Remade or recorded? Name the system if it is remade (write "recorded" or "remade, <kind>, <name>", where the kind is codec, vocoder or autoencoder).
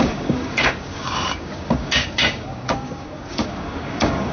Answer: remade, codec, DAC